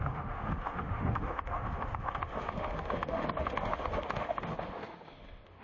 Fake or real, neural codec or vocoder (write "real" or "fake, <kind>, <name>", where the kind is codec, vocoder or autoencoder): fake, autoencoder, DAC-VAE